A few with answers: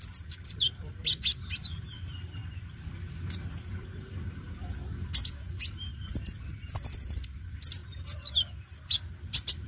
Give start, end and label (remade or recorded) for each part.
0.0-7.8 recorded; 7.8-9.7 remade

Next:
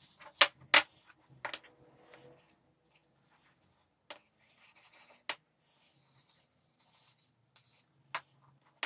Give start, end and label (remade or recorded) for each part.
0.0-8.9 recorded

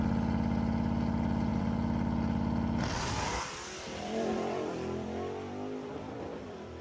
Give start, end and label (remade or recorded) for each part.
0.0-6.8 remade

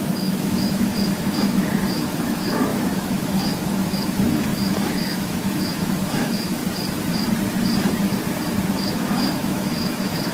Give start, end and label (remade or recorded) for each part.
0.0-6.6 remade; 6.6-8.7 recorded; 8.7-10.3 remade